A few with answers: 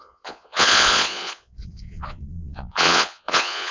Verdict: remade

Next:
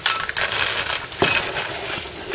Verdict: recorded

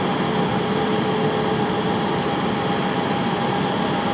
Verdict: recorded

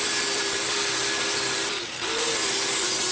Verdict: recorded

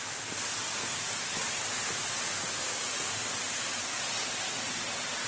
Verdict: recorded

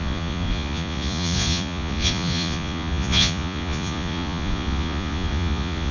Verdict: remade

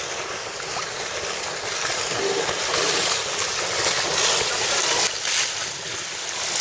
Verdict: recorded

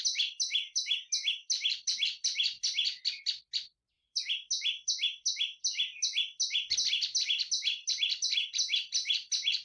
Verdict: recorded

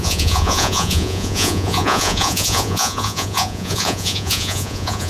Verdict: remade